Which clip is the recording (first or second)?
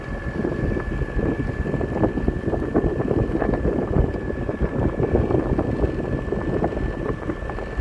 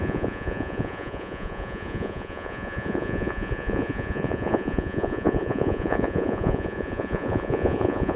first